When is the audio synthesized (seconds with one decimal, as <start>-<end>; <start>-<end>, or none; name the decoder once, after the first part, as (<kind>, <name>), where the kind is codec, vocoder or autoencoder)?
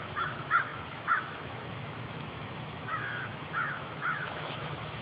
0.0-5.0 (autoencoder, DAC-VAE)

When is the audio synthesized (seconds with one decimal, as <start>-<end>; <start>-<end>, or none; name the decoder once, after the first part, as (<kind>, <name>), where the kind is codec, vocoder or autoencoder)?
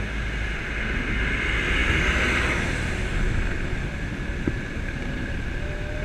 none